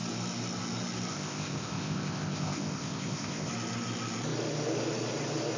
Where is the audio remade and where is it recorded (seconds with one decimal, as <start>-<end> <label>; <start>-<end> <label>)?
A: 0.0-1.1 recorded; 1.1-3.5 remade; 3.5-5.6 recorded